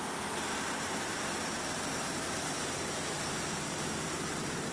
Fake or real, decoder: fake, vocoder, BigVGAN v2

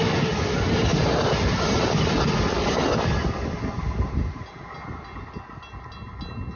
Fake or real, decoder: real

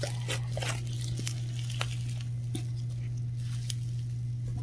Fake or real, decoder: real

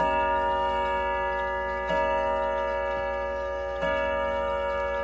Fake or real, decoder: real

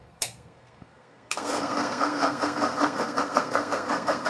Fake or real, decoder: fake, codec, SNAC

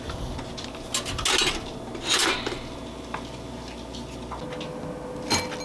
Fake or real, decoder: real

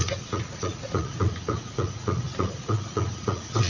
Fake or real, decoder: fake, vocoder, Vocos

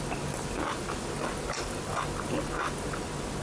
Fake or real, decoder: real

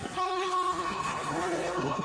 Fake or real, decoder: fake, codec, SNAC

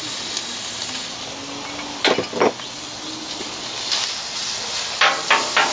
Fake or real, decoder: real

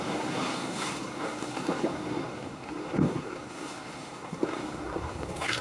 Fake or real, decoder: fake, codec, SNAC